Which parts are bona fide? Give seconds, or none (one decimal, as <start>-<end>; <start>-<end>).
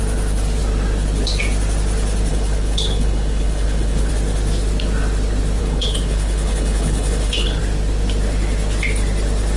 0.0-2.3; 4.1-5.6; 7.6-9.6